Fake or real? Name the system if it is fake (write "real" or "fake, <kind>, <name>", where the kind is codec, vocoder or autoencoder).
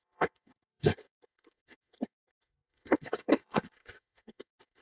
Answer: fake, codec, SNAC